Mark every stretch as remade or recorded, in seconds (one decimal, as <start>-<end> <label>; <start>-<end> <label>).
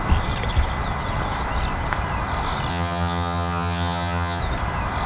0.0-2.7 recorded; 2.7-4.4 remade; 4.4-5.1 recorded